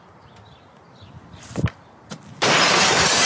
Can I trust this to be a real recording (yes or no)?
yes